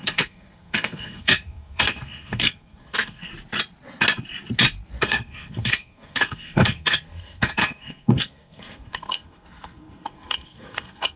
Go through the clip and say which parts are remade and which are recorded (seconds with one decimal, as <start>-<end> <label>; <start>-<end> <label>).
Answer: 0.0-3.3 remade; 3.3-5.0 recorded; 5.0-11.2 remade